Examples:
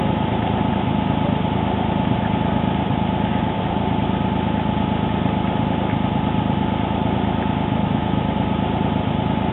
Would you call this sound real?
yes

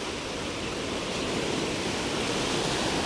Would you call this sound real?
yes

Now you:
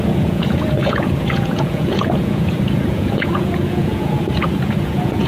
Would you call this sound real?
no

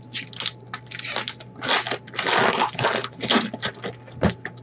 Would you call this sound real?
yes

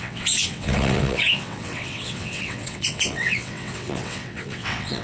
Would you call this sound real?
no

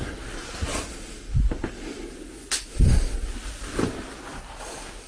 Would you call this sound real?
yes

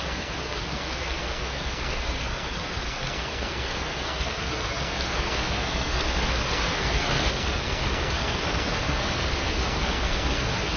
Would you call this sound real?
no